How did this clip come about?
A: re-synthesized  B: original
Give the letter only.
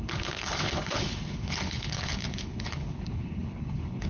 A